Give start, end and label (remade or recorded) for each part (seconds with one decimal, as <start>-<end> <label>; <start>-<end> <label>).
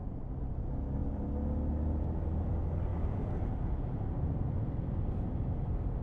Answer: 0.0-2.9 recorded; 2.9-3.4 remade; 3.4-6.0 recorded